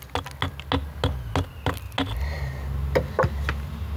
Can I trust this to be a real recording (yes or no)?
yes